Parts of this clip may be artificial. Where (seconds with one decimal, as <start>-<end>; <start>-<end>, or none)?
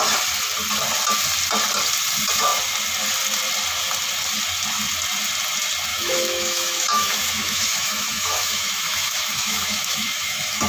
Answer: 5.9-10.7